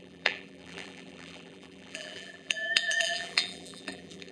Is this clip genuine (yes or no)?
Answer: no